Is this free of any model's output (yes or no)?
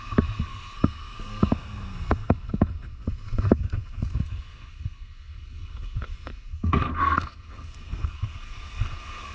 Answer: no